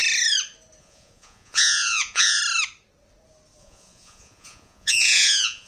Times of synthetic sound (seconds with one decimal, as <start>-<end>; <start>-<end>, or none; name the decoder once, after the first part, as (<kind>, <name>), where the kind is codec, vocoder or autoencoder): 0.8-2.4 (vocoder, Vocos); 3.6-5.7